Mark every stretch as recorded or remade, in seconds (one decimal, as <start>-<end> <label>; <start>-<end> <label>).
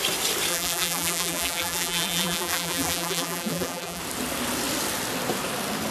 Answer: 0.0-0.5 recorded; 0.5-4.0 remade; 4.0-5.9 recorded